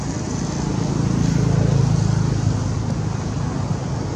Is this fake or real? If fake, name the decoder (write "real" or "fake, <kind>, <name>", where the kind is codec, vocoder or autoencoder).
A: real